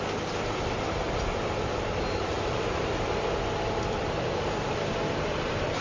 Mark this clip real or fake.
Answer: real